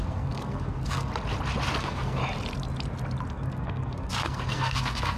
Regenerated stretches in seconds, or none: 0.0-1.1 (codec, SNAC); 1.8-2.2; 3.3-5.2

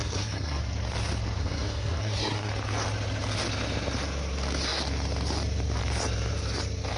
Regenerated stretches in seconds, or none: 0.0-0.6 (codec, SNAC); 1.4-2.5

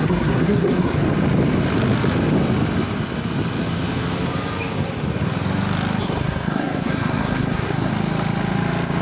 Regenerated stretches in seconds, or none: 0.0-1.0 (codec, SNAC); 6.0-7.9

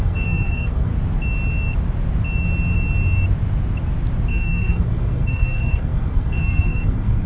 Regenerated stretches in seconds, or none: 0.0-0.9 (codec, SNAC); 4.3-7.3